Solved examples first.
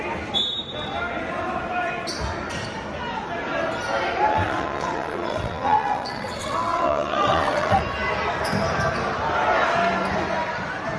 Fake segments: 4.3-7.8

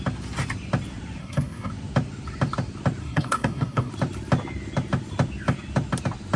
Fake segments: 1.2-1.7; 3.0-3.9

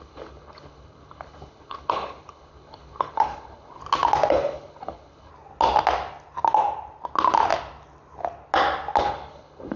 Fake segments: 0.0-3.8; 4.3-5.3; 9.0-9.8